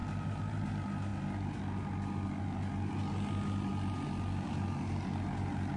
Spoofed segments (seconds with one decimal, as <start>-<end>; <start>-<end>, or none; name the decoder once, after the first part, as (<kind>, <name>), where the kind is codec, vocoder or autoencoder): none